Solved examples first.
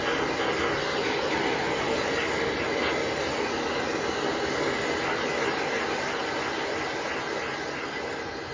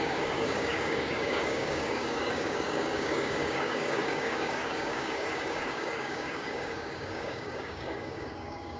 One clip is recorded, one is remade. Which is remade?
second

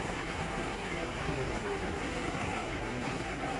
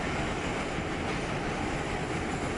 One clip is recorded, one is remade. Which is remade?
first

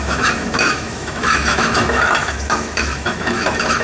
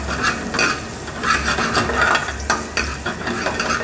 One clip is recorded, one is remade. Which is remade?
first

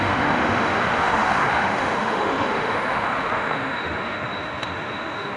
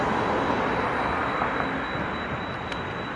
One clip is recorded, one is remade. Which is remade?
first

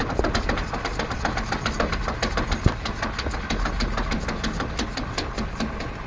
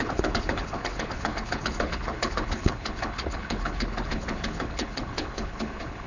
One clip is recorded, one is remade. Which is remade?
second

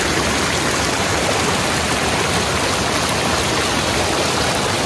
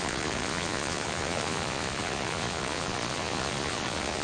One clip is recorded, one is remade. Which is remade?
second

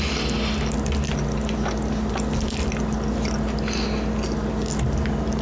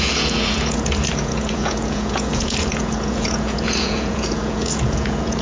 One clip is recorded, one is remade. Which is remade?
second